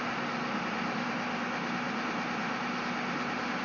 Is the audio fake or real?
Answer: real